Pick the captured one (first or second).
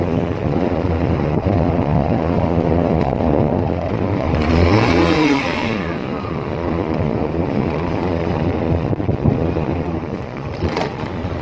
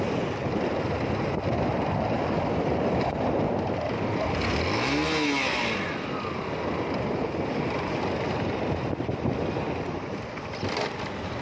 second